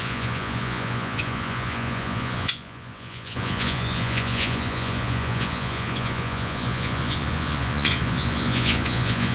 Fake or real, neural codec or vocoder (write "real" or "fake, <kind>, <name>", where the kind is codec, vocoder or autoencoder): fake, vocoder, Vocos